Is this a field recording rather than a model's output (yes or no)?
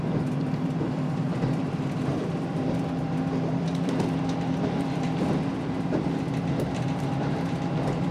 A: no